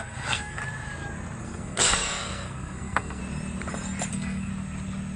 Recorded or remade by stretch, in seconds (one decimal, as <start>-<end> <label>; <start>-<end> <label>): 0.0-0.6 remade; 0.6-1.4 recorded; 1.4-3.2 remade; 3.2-4.1 recorded; 4.1-4.5 remade; 4.5-5.2 recorded